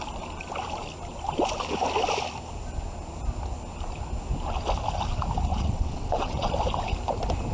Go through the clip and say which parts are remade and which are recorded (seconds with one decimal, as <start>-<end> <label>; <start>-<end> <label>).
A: 0.0-5.5 recorded; 5.5-6.5 remade; 6.5-7.5 recorded